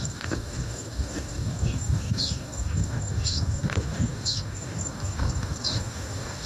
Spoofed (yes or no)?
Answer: yes